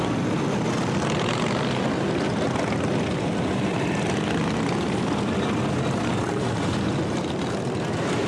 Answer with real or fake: real